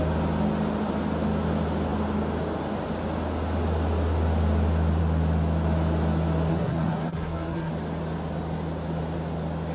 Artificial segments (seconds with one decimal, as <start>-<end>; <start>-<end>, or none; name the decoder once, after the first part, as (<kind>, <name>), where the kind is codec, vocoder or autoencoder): 6.5-7.7 (codec, SNAC)